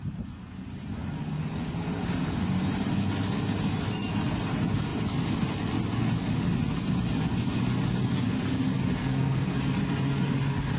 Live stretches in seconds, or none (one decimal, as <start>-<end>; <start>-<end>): 0.0-9.0; 9.6-10.8